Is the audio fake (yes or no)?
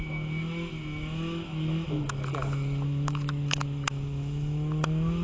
yes